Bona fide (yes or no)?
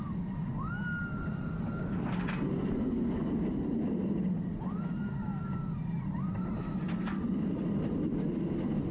yes